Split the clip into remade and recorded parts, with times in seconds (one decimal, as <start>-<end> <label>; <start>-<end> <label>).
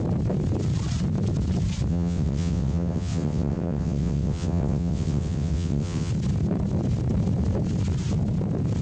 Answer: 0.0-1.9 recorded; 1.9-6.1 remade; 6.1-8.8 recorded